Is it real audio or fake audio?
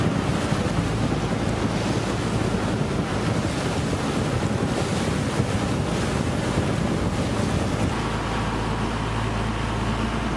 real